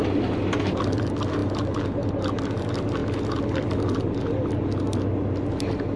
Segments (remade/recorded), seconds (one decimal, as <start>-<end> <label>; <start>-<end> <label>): 0.0-6.0 recorded